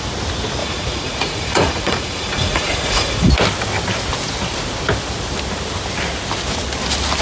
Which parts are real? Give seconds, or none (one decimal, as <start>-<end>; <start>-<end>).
0.0-0.6; 3.3-7.2